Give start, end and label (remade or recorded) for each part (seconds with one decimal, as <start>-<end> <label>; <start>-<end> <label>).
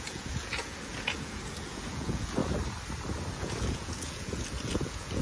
0.0-2.4 remade; 2.4-3.3 recorded; 3.3-5.2 remade